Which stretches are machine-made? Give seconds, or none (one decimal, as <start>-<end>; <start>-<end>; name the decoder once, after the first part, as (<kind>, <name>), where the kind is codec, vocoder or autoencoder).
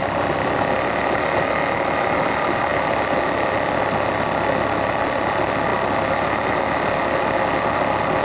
none